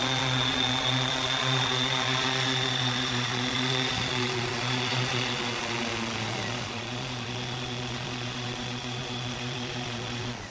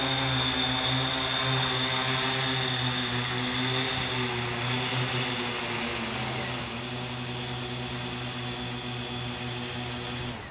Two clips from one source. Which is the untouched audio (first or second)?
second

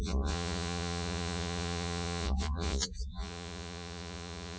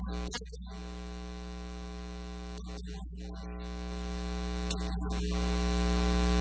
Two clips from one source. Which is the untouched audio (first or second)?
second